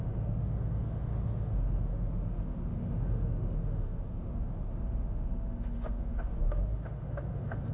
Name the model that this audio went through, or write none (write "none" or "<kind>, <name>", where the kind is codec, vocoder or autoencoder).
autoencoder, DAC-VAE